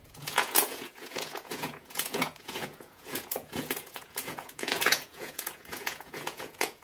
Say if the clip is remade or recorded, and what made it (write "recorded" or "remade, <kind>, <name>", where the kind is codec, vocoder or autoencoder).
remade, vocoder, Vocos